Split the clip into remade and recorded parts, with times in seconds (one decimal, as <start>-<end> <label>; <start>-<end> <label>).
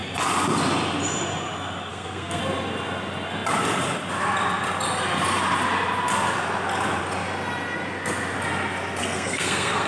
0.0-1.9 recorded; 1.9-2.4 remade; 2.4-9.0 recorded; 9.0-9.9 remade